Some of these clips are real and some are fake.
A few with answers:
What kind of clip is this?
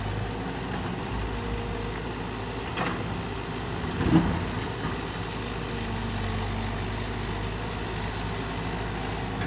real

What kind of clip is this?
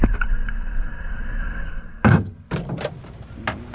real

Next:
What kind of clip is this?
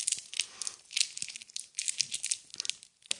real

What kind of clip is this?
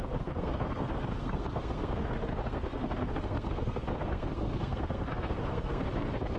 fake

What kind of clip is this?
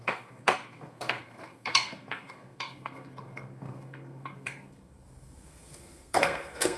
fake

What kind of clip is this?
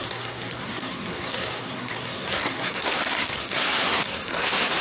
fake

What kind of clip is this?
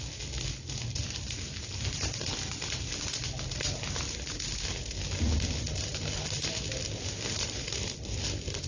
real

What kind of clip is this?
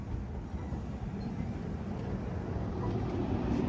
real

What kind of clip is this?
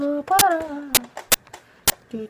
real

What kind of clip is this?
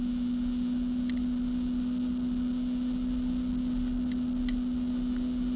real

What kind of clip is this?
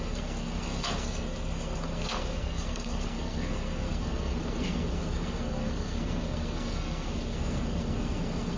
fake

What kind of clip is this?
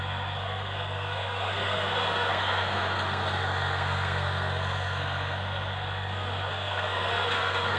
fake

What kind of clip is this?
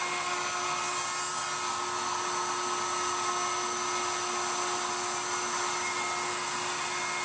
real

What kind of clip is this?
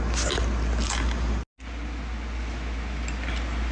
real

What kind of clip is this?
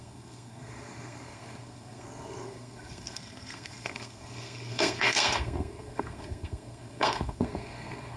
fake